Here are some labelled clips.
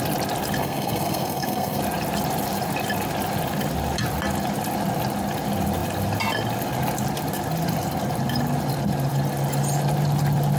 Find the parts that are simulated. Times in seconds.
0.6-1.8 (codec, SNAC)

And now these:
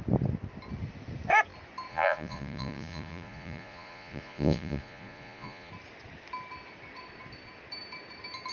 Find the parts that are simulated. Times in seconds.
1.9-5.7 (vocoder, Vocos)

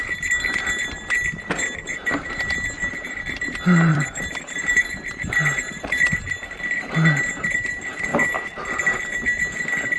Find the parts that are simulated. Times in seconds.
3.9-6.9 (vocoder, BigVGAN v2)

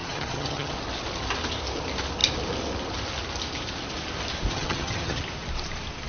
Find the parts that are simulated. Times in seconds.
0.0-0.7 (vocoder, HiFi-GAN); 4.5-5.2

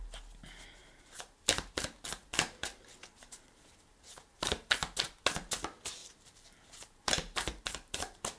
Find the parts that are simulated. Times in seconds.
0.8-1.8 (vocoder, BigVGAN v2); 2.2-4.7; 6.0-8.4

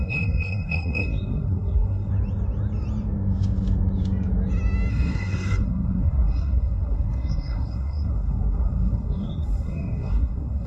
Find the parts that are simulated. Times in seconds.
0.0-2.1 (codec, SNAC); 4.9-10.7